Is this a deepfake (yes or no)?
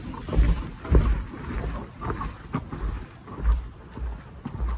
no